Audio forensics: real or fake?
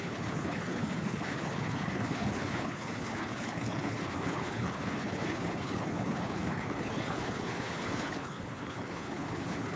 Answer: fake